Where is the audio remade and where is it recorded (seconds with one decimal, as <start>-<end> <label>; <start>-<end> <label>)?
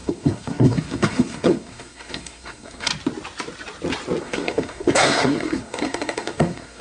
0.0-2.9 remade; 2.9-4.2 recorded; 4.2-6.8 remade